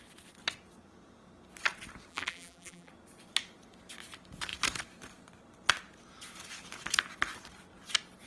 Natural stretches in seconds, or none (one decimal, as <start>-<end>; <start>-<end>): 0.0-2.1; 2.9-8.3